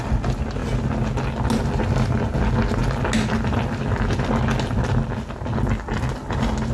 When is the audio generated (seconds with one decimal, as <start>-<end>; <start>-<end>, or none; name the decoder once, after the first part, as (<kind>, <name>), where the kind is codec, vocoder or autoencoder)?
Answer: none